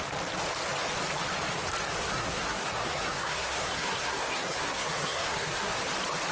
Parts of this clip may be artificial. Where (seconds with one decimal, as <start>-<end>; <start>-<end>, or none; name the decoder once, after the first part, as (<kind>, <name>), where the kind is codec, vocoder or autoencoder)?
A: 2.2-5.8 (codec, SNAC)